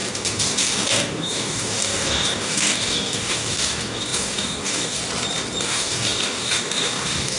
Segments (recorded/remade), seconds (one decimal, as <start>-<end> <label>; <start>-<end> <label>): 0.0-5.0 remade; 5.0-5.6 recorded; 5.6-7.4 remade